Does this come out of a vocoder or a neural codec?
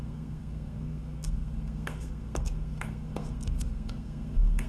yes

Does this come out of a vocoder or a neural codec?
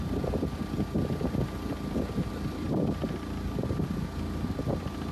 no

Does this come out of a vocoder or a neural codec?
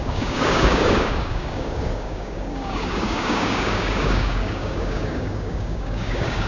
yes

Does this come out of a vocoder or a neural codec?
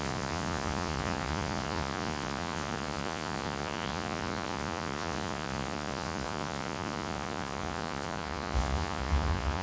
yes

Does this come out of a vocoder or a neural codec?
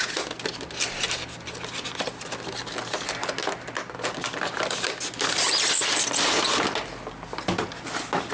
no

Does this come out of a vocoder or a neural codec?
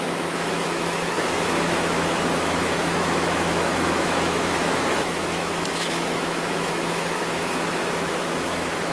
yes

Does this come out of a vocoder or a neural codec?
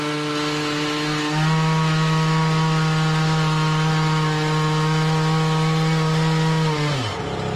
no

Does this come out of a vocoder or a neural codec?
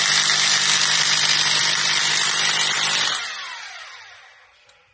no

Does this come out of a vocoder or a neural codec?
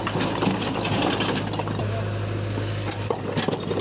no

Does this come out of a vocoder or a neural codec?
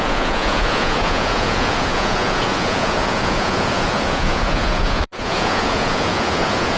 yes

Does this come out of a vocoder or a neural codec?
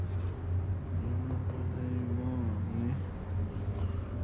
no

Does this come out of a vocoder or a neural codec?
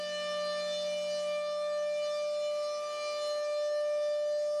no